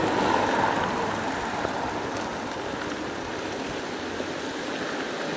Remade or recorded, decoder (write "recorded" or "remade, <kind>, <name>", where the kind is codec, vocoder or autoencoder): recorded